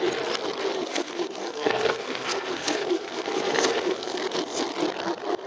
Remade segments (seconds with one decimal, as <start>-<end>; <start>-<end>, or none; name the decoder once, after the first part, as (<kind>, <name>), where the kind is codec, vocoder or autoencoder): 0.9-4.2 (codec, SNAC)